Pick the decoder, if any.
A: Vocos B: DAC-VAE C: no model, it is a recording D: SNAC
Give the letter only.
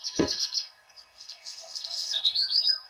D